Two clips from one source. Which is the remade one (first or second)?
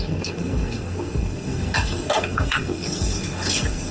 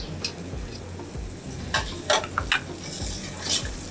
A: first